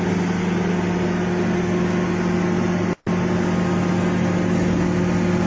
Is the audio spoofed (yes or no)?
no